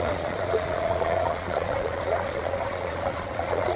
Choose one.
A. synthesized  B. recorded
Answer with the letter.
A